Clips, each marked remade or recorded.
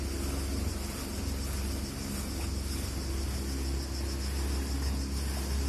recorded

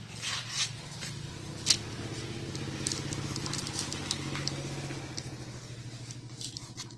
recorded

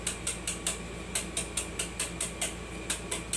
recorded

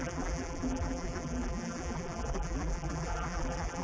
remade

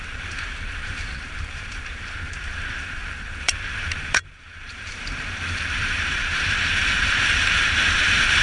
remade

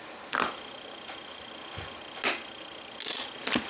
recorded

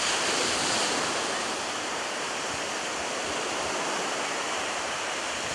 recorded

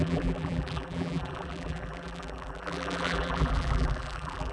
remade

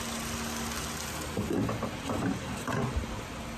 recorded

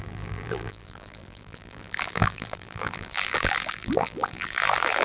remade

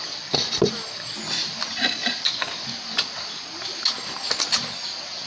recorded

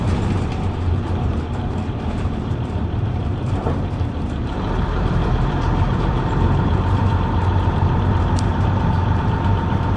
remade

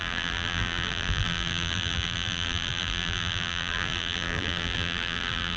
remade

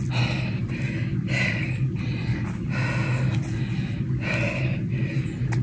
recorded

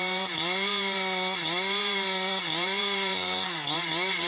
remade